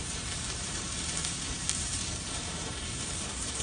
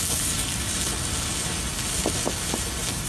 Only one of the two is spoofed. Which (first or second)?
first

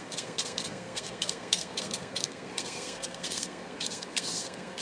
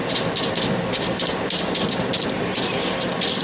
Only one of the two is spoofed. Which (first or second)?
first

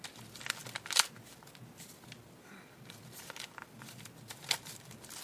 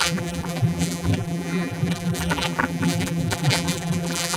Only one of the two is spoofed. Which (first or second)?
second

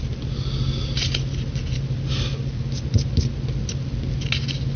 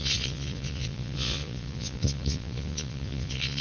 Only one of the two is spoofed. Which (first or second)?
second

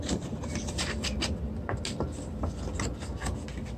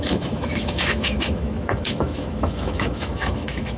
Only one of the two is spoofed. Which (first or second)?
second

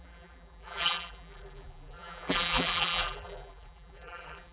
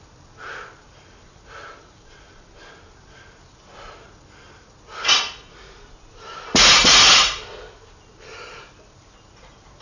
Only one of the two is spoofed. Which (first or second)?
first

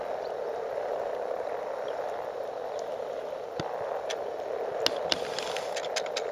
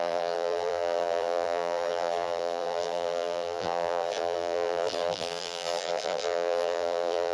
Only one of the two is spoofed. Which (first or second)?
second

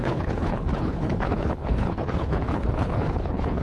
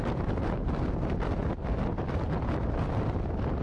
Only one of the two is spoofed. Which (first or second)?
first